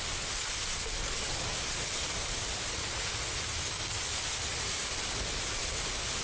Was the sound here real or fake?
real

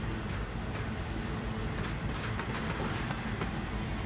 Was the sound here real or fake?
fake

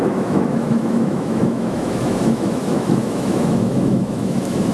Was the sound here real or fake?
fake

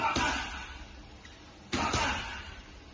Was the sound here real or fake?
real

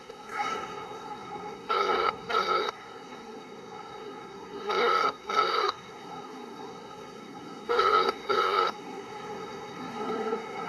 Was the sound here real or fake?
fake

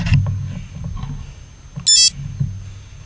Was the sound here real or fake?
real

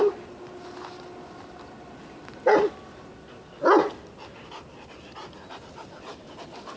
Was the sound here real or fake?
real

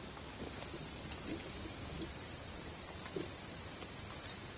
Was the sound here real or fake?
real